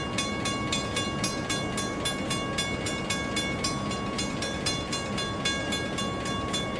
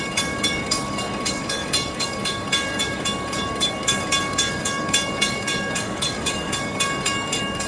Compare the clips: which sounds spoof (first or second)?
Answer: second